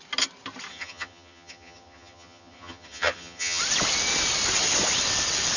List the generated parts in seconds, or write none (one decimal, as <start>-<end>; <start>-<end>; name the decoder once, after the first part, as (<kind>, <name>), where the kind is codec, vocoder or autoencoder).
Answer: 0.7-3.6 (vocoder, HiFi-GAN)